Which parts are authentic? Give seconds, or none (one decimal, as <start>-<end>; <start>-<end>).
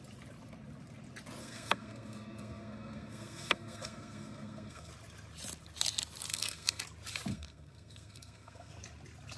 0.0-1.4; 4.9-6.3; 6.8-7.3; 8.7-9.4